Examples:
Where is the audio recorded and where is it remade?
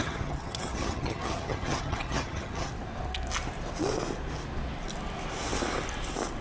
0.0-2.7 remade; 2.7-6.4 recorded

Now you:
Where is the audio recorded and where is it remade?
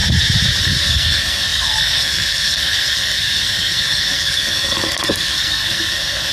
0.0-0.6 recorded; 0.6-6.3 remade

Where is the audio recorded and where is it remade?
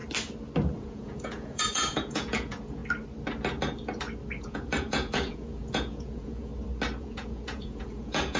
0.0-0.8 recorded; 0.8-2.8 remade; 2.8-4.4 recorded; 4.4-6.5 remade; 6.5-7.0 recorded; 7.0-8.4 remade